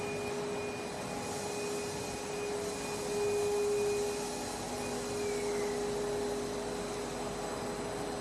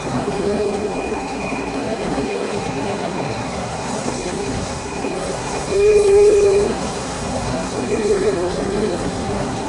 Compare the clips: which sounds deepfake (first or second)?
second